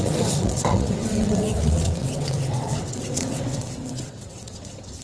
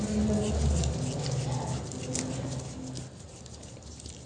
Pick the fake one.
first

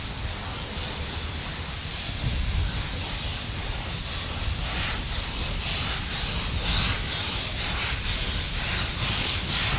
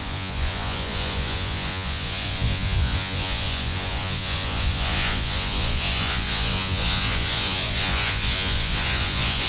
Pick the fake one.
second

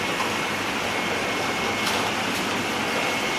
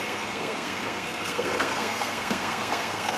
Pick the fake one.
second